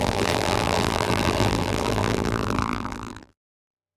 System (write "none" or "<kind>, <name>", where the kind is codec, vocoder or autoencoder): vocoder, BigVGAN v2